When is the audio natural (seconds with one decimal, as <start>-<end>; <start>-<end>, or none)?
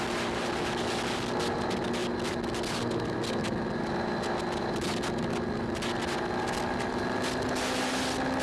0.0-8.4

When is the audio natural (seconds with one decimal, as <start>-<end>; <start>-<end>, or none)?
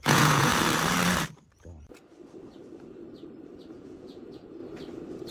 0.5-3.7; 4.6-5.3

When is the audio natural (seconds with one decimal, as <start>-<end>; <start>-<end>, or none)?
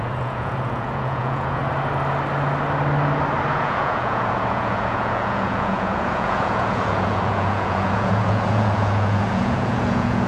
1.6-3.5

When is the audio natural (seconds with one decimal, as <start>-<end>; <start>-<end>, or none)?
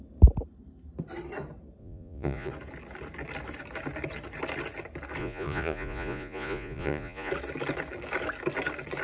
0.0-1.8; 2.5-5.2; 7.3-9.0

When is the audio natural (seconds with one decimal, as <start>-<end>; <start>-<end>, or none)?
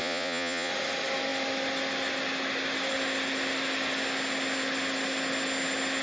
0.7-6.0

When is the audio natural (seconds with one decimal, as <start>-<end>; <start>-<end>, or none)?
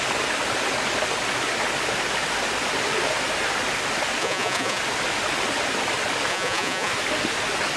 0.0-4.2; 4.8-6.3; 6.9-7.8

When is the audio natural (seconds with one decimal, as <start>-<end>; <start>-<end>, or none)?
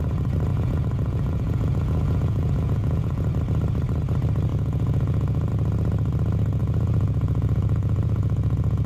0.0-0.5; 3.3-4.5; 5.5-6.6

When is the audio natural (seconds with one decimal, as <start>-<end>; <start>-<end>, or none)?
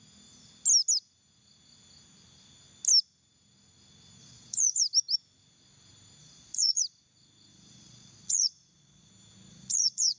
0.0-4.2; 4.8-6.2; 6.8-7.5; 9.1-9.5